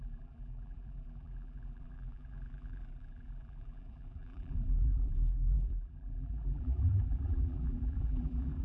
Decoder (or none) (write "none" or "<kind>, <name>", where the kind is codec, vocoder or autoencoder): vocoder, BigVGAN v2